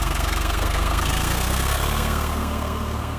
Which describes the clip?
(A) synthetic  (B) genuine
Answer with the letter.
A